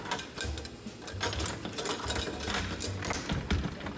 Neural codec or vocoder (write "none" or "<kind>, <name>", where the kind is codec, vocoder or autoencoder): none